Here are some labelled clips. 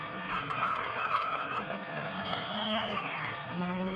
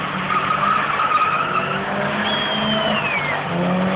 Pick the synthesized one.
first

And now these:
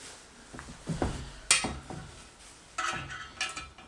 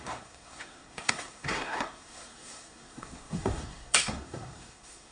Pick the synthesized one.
second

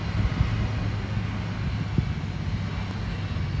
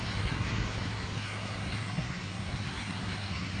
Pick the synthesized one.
second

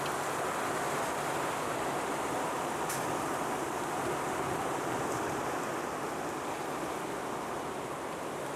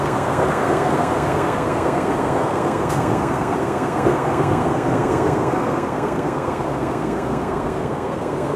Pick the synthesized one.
second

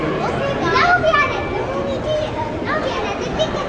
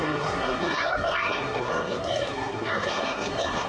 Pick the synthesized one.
second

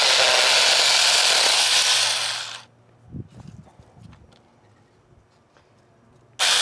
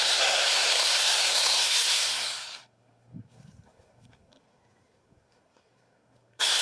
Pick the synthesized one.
second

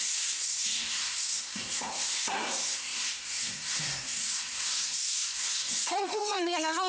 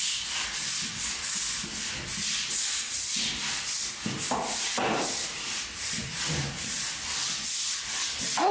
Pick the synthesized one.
first